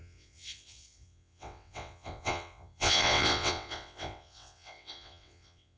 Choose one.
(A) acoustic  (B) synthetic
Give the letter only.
B